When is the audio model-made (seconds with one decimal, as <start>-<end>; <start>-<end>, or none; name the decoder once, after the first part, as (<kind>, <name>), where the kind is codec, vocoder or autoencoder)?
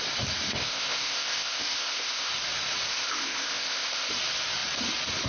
0.5-2.3 (codec, ZipCodec); 2.9-4.1